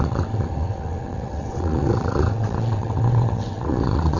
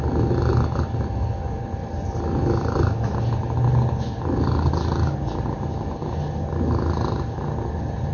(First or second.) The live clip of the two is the second